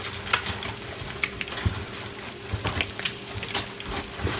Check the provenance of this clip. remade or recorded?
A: recorded